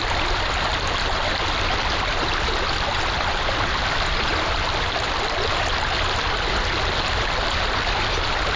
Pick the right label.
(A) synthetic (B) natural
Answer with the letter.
B